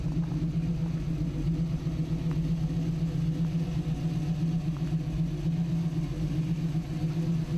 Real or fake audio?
real